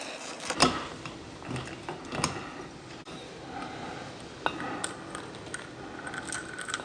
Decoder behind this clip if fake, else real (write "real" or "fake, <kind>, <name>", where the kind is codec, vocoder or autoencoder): real